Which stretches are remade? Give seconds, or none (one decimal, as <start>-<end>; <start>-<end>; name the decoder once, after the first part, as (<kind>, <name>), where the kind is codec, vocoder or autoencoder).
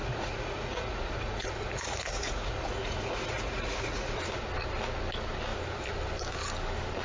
0.0-4.2 (vocoder, Vocos)